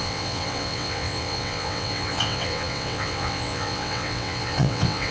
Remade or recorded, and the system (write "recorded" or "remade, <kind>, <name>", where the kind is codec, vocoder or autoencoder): remade, vocoder, WaveNeXt